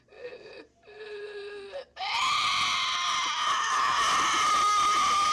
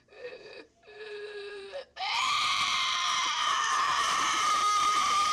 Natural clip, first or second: first